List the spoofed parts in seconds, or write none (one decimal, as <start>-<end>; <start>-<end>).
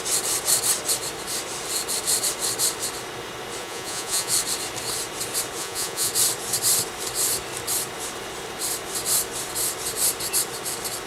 3.6-4.3; 5.6-6.1